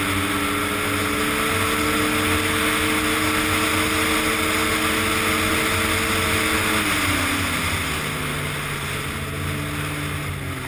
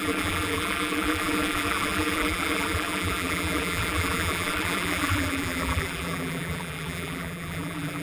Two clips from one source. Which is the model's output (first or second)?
second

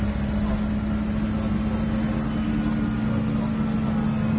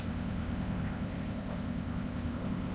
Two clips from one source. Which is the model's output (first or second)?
second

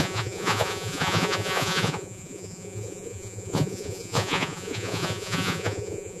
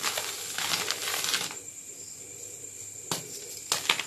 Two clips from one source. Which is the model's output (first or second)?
first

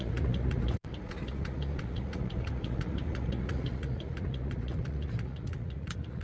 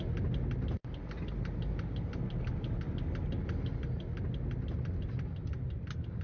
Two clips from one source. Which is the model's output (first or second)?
first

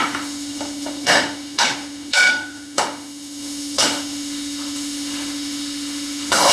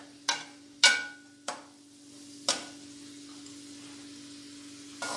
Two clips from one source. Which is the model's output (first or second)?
first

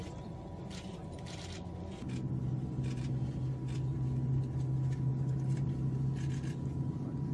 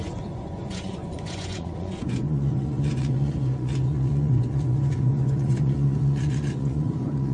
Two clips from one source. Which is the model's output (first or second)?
second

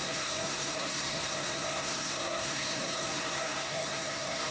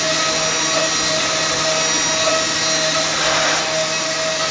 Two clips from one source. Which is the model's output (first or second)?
first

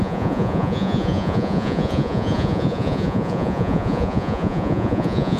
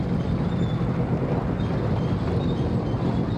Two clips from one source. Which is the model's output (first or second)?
first